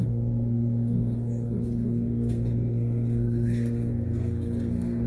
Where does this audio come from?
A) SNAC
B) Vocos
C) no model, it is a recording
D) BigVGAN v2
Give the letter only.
A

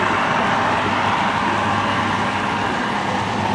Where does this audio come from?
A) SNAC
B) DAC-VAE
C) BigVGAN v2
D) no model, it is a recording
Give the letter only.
D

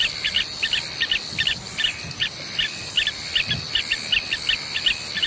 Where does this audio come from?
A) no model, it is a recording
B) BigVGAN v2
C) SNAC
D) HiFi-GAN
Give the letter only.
A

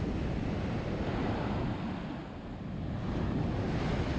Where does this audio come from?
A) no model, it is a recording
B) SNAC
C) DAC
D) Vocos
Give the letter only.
A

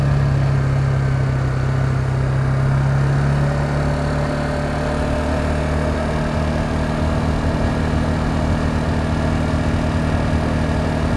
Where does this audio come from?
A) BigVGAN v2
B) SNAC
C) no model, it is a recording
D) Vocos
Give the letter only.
C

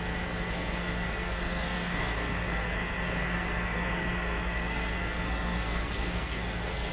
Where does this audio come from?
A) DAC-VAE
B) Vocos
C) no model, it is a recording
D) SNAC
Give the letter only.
D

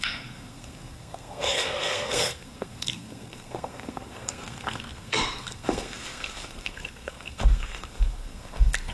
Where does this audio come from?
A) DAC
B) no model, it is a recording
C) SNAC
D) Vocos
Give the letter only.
C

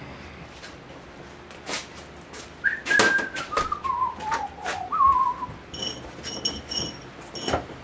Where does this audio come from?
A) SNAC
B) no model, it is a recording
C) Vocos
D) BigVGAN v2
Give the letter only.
B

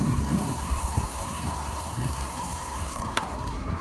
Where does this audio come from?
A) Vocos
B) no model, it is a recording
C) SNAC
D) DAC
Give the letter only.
C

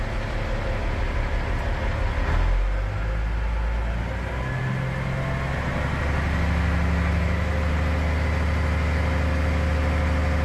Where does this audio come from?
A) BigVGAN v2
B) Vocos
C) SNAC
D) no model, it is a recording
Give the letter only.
D